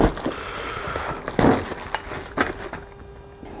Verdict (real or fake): real